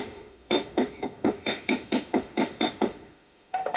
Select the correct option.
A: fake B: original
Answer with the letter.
A